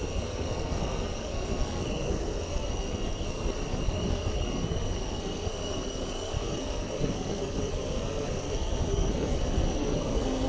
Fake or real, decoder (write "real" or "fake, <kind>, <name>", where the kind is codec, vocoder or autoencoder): fake, codec, SNAC